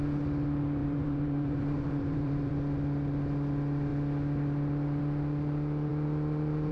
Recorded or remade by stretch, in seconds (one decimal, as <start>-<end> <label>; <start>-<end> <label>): 0.0-0.8 recorded; 0.8-2.5 remade; 2.5-6.7 recorded